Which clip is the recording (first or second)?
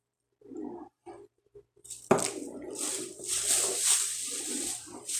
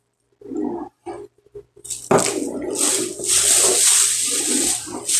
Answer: second